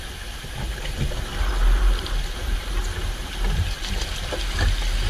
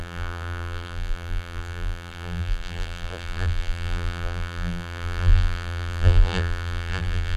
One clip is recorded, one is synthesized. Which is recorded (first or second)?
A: first